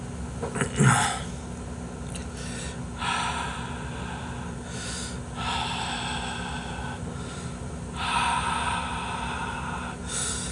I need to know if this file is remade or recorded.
recorded